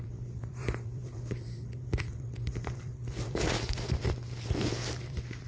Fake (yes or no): yes